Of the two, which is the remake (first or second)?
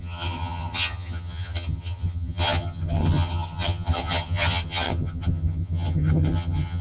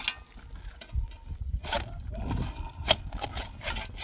first